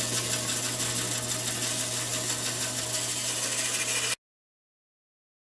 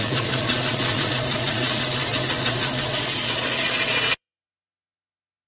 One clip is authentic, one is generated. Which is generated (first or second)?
second